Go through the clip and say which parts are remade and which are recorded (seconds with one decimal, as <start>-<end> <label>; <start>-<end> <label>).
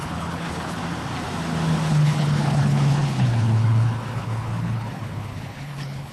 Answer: 0.0-0.8 remade; 0.8-1.9 recorded; 1.9-6.1 remade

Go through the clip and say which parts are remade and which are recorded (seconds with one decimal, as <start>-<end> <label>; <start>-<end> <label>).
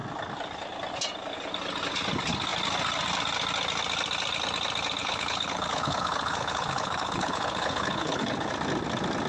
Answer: 0.0-5.0 recorded; 5.0-8.5 remade; 8.5-9.3 recorded